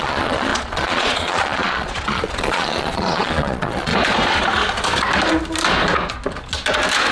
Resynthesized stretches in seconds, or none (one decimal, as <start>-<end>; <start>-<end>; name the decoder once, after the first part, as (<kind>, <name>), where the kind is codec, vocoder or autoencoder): 0.0-3.9 (vocoder, Vocos)